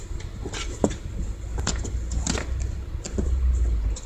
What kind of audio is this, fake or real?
real